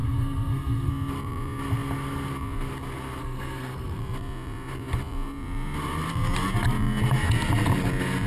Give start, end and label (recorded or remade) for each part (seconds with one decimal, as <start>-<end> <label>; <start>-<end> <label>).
0.0-0.9 remade; 0.9-3.2 recorded; 3.2-4.0 remade; 4.0-8.3 recorded